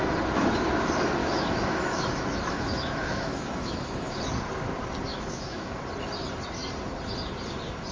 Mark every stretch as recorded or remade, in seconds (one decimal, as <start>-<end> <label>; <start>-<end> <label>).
0.0-1.2 recorded; 1.2-4.2 remade; 4.2-5.1 recorded; 5.1-5.8 remade; 5.8-7.9 recorded